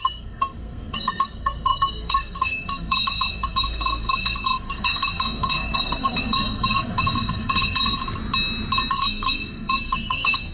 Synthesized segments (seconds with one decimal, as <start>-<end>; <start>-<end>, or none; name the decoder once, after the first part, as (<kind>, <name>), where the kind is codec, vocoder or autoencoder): 0.0-8.0 (codec, SNAC); 8.9-10.5